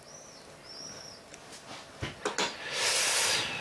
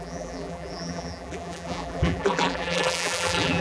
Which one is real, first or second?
first